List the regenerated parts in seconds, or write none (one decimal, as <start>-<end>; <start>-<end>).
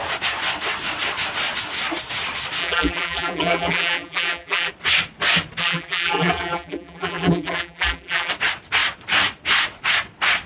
2.6-4.7; 5.6-8.3